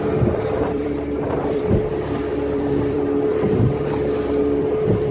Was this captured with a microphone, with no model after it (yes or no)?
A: no